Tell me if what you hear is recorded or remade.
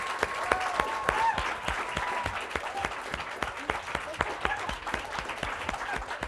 recorded